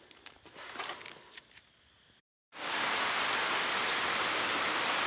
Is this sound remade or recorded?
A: recorded